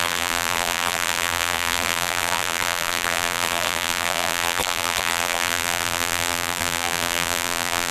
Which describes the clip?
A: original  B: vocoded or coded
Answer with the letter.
B